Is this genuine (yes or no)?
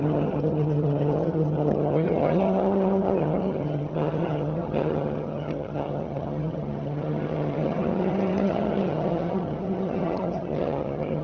no